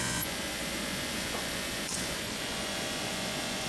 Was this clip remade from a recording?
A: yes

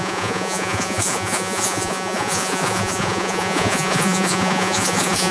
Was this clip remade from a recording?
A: yes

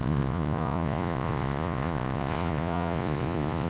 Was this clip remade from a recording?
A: yes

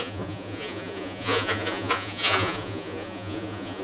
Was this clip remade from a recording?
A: yes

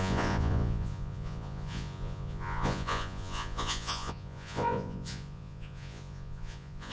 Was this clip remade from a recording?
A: yes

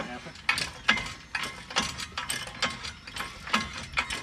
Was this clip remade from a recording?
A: no